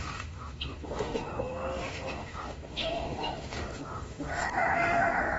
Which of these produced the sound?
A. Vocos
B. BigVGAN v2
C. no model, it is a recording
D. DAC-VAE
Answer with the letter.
D